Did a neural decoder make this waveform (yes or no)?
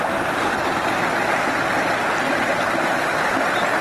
no